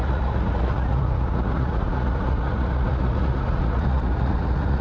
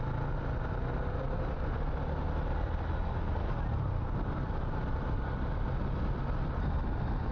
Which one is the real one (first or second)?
second